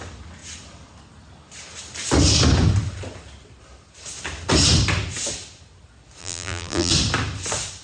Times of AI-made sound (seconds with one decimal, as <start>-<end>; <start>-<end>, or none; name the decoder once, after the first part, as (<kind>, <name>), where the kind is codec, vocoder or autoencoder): 6.2-6.9 (vocoder, BigVGAN v2)